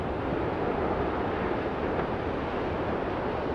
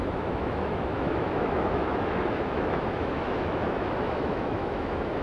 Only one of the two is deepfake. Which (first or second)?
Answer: second